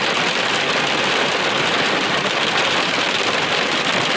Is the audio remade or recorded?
recorded